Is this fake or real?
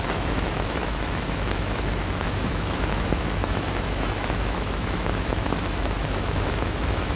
fake